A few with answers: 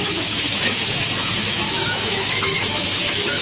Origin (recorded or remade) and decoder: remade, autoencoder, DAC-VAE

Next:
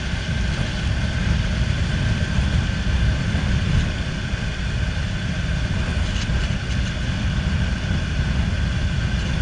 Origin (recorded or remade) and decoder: recorded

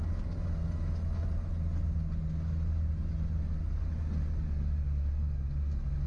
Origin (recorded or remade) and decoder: recorded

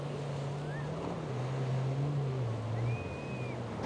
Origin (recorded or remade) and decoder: recorded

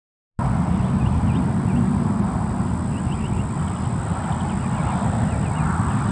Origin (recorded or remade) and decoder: recorded